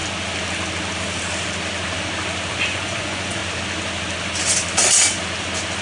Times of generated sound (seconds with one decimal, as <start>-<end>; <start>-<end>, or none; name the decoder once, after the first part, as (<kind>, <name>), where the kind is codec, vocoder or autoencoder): 2.7-3.4 (vocoder, Vocos)